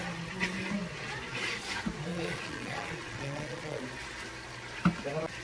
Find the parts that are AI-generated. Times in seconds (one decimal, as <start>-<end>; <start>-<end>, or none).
2.1-3.8

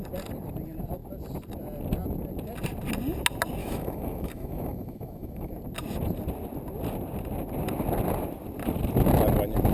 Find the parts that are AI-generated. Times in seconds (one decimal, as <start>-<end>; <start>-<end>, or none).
3.6-5.5